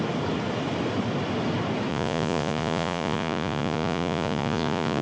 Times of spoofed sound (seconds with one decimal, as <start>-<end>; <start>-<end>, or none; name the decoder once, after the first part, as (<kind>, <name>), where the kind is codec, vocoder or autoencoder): 1.9-5.0 (vocoder, Vocos)